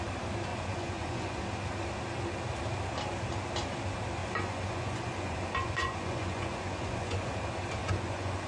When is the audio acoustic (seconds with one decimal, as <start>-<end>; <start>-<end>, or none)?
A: 0.0-0.5; 1.4-4.2; 7.3-7.8